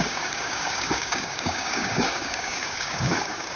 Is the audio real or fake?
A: fake